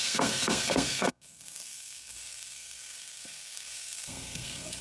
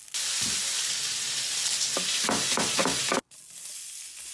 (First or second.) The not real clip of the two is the first